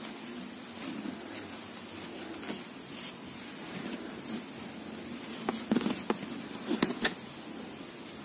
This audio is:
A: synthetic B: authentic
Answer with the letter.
B